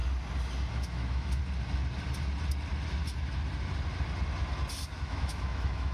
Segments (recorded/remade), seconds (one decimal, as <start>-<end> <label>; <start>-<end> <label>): 0.0-0.7 recorded; 0.7-1.4 remade; 1.4-4.9 recorded; 4.9-5.9 remade